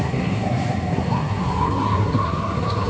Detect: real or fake fake